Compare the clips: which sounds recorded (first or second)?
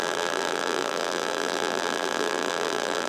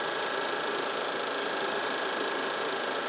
second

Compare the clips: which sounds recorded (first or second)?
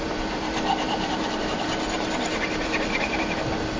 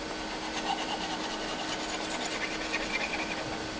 second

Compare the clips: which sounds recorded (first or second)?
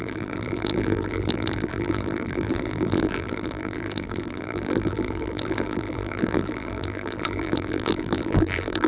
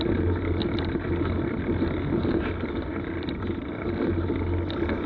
second